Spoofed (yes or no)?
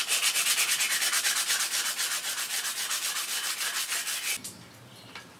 no